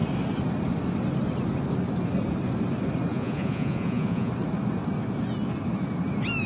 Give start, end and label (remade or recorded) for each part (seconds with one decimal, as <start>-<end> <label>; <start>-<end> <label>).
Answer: 0.0-3.1 recorded; 3.1-4.3 remade; 4.3-6.5 recorded

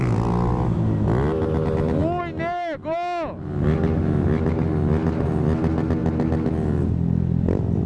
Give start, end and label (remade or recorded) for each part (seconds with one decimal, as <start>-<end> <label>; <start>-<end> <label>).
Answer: 0.0-7.9 recorded

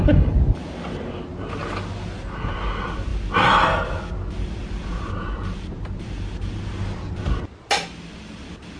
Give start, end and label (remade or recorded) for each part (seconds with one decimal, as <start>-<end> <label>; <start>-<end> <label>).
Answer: 0.0-8.8 recorded